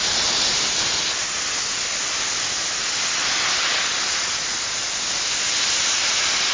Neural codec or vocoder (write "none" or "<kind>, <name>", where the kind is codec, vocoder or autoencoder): none